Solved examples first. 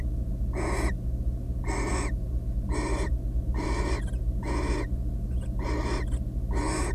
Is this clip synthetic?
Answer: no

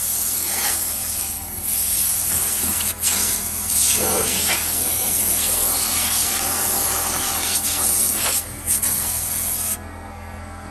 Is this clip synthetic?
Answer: yes